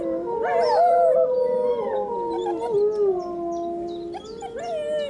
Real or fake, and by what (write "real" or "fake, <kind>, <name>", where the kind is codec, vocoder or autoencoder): real